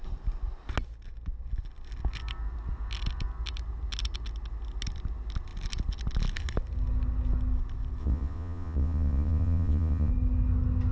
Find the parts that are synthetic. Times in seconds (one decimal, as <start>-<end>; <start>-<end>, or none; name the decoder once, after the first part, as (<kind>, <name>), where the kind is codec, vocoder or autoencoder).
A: 8.0-10.1 (vocoder, Vocos)

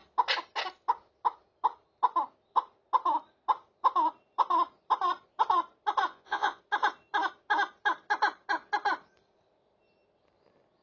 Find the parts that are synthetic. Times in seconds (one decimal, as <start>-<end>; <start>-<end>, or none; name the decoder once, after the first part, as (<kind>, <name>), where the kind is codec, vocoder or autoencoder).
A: 6.1-6.6 (vocoder, Vocos)

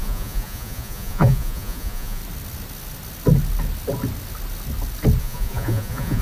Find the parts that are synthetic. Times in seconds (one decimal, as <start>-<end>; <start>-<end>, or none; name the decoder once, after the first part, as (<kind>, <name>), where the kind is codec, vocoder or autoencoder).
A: 0.0-2.2 (vocoder, Vocos); 5.2-6.2

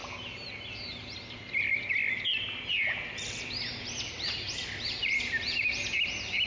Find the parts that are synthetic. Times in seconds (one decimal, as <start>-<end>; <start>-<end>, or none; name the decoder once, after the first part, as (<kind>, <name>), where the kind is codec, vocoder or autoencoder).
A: none

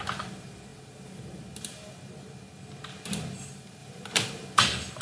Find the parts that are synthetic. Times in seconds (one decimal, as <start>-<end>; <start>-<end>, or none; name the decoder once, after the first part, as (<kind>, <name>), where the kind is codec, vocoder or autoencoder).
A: 3.8-4.6 (vocoder, BigVGAN v2)

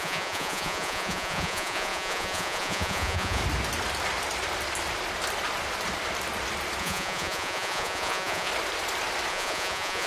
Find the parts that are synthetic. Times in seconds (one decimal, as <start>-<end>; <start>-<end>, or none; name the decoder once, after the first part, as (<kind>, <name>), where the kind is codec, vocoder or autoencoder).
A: 0.0-3.4 (vocoder, Vocos); 6.8-8.5; 9.3-10.1

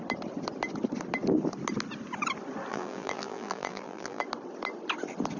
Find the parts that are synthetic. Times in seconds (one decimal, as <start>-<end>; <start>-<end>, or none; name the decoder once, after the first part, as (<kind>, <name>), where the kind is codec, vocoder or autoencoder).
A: 2.7-4.2 (vocoder, BigVGAN v2)

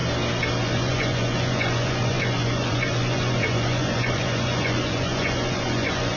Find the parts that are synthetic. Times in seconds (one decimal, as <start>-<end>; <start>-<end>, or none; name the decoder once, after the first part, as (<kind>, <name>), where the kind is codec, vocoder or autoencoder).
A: 0.6-6.2 (vocoder, Vocos)